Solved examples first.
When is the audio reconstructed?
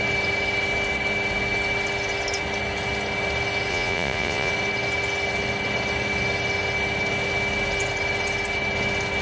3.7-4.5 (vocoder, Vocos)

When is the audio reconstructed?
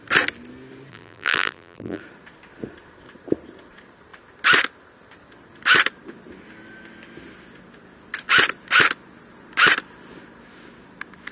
0.9-2.0 (vocoder, BigVGAN v2)